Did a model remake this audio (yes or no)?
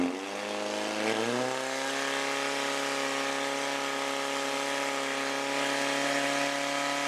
no